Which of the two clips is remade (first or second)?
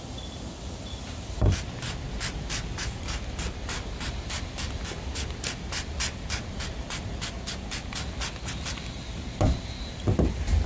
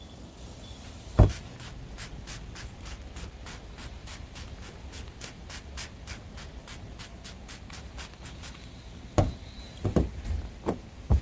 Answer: first